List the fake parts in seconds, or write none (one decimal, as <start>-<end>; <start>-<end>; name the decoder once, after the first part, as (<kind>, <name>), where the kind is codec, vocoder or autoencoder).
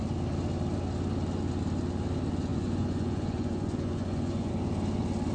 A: 2.5-4.5 (vocoder, Vocos)